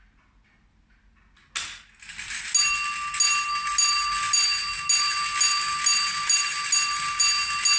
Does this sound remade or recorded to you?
recorded